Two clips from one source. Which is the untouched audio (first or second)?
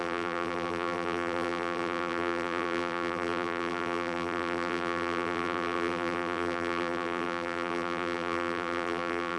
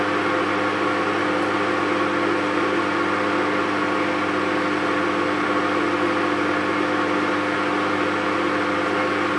second